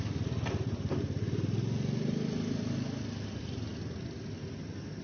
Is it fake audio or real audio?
real